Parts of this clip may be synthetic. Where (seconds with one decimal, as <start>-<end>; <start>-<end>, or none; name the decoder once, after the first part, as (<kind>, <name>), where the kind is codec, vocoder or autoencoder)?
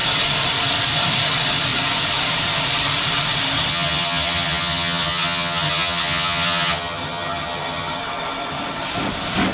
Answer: 3.7-8.0 (vocoder, HiFi-GAN)